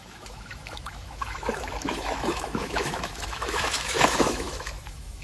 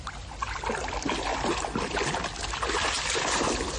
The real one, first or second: second